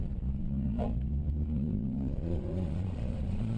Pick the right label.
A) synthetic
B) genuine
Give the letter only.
A